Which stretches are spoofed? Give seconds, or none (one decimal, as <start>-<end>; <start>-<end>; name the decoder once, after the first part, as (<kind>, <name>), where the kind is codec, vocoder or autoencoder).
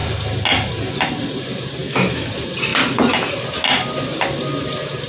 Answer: 1.8-2.3 (autoencoder, DAC-VAE)